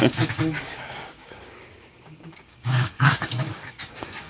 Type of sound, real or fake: fake